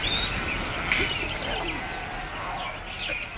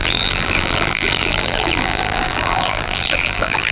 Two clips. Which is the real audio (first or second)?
first